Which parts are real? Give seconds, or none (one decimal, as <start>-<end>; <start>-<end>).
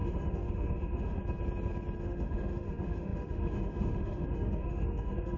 1.2-2.0